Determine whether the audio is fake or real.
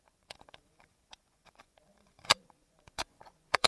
fake